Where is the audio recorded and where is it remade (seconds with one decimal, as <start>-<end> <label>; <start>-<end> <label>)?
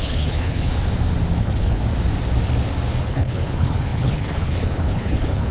0.0-0.7 remade; 0.7-1.4 recorded; 1.4-1.8 remade; 1.8-3.0 recorded; 3.0-5.5 remade